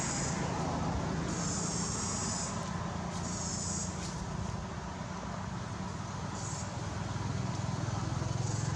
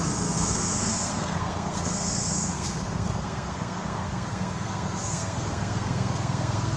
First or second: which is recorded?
first